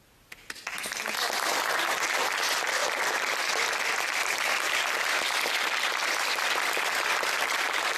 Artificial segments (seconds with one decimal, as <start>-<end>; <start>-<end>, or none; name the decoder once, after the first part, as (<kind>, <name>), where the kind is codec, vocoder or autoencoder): none